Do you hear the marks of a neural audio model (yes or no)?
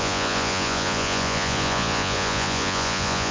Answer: yes